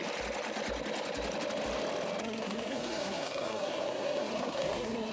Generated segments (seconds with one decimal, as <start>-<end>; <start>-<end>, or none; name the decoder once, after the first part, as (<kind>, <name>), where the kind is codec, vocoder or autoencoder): 2.2-5.1 (codec, SNAC)